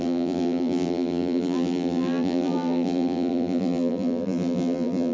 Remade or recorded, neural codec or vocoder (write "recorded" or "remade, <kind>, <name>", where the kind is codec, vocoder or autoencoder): remade, vocoder, BigVGAN v2